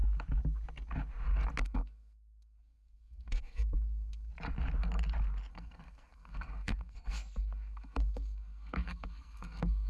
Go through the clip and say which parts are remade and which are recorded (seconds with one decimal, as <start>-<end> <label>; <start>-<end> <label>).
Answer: 0.0-1.6 recorded; 1.6-4.3 remade; 4.3-5.5 recorded; 5.5-9.9 remade